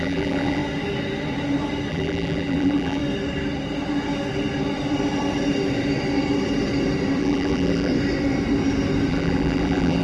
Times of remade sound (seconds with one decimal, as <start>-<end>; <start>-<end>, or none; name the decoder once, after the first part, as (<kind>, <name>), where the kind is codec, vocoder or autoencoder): 0.0-0.6 (vocoder, BigVGAN v2); 1.9-3.0; 7.2-7.9; 9.1-10.0